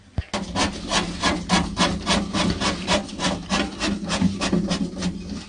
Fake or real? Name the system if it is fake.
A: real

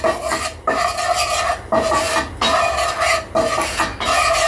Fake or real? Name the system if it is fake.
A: real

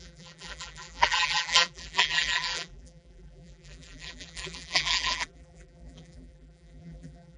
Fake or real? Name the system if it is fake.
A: fake, vocoder, BigVGAN v2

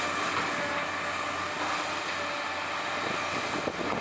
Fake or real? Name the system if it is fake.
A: real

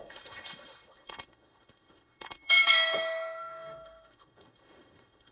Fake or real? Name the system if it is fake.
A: fake, autoencoder, DAC-VAE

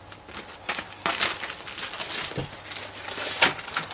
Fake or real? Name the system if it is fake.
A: real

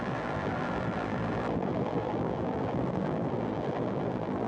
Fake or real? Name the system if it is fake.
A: fake, vocoder, BigVGAN v2